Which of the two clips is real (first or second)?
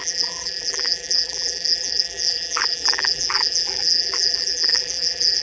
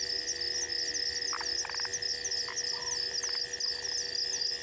second